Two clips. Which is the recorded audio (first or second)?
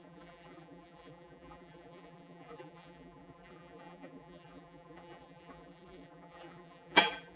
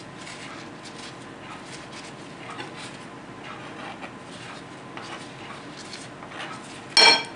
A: second